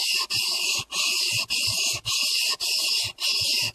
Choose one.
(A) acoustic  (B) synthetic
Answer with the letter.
A